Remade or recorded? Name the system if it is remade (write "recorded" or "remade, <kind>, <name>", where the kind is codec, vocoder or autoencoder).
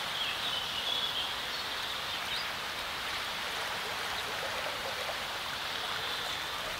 recorded